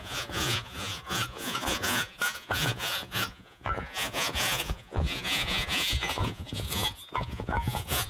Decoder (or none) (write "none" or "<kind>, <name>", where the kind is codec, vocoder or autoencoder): vocoder, Vocos